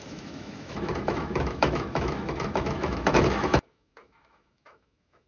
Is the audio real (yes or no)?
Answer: no